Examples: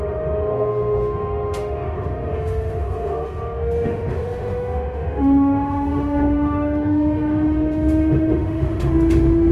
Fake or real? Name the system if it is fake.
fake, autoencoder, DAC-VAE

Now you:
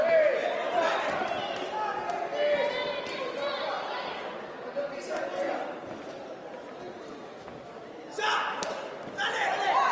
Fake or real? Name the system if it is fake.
real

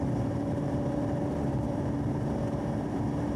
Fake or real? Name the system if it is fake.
fake, vocoder, BigVGAN v2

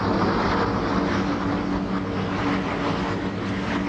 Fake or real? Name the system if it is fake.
real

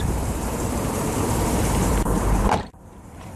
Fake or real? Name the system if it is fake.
fake, vocoder, BigVGAN v2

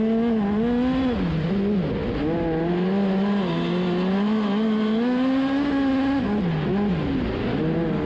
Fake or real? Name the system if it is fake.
real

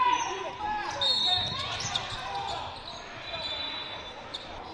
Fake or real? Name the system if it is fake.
real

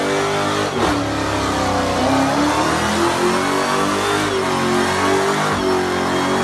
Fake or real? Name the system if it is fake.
real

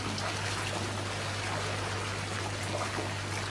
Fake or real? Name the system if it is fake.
real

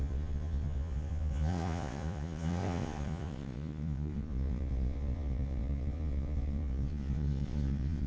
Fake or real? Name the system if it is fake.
fake, vocoder, Vocos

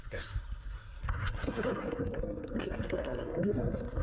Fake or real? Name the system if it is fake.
fake, codec, SNAC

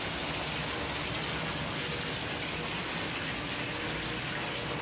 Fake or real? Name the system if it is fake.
real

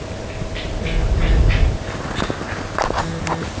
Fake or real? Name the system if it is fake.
real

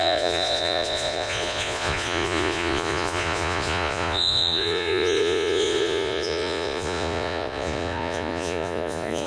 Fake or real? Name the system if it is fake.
fake, vocoder, Vocos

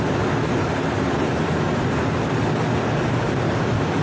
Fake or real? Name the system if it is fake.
real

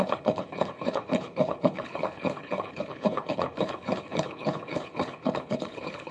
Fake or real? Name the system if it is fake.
fake, codec, HILCodec